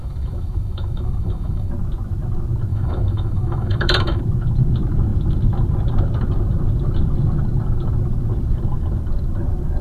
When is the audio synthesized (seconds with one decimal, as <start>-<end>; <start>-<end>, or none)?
0.0-1.7; 2.7-4.2